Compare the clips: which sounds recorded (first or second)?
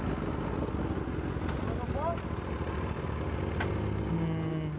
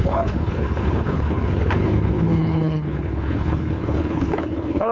first